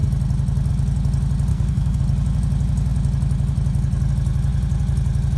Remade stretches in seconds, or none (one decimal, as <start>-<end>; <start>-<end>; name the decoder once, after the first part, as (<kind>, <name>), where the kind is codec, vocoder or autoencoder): 1.5-2.0 (codec, SNAC)